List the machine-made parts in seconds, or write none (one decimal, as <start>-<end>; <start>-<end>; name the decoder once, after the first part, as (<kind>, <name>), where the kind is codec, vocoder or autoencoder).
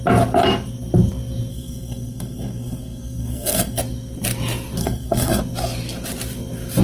1.5-3.8 (codec, SNAC); 4.8-5.4